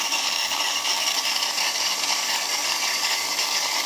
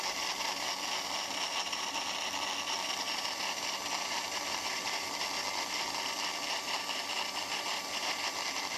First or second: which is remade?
first